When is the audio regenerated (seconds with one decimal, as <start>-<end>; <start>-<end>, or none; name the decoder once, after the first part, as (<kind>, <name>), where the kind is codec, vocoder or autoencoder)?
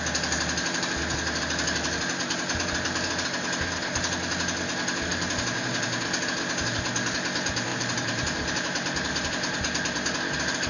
5.1-5.9 (vocoder, BigVGAN v2); 7.7-9.1